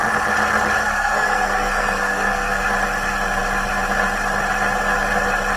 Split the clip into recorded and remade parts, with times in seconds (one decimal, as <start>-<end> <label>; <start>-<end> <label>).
0.0-0.8 recorded; 0.8-2.6 remade; 2.6-5.6 recorded

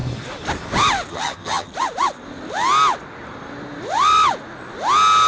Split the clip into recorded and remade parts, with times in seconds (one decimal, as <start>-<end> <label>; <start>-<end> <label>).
0.0-1.1 recorded; 1.1-1.7 remade; 1.7-5.3 recorded

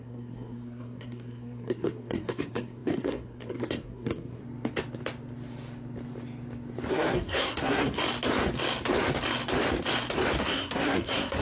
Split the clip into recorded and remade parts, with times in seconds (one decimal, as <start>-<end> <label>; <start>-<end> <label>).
0.0-4.4 remade; 4.4-6.9 recorded; 6.9-8.0 remade; 8.0-10.4 recorded; 10.4-11.4 remade